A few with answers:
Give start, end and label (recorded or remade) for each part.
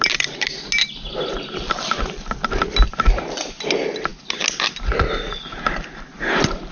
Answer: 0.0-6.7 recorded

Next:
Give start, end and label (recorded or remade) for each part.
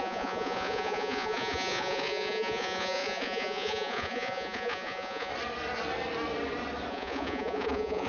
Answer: 0.0-5.3 remade; 5.3-6.9 recorded; 6.9-8.1 remade